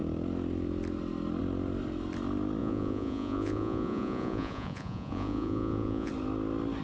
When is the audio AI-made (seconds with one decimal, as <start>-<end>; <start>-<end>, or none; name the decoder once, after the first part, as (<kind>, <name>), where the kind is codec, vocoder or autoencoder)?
2.6-6.1 (vocoder, Vocos)